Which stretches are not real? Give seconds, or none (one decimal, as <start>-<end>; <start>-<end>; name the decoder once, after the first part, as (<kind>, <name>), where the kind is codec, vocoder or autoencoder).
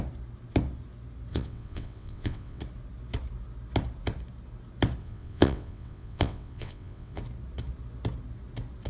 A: 1.3-2.6 (vocoder, WaveNeXt); 5.0-7.2